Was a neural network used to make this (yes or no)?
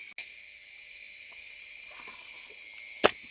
no